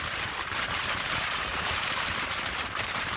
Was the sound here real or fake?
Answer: fake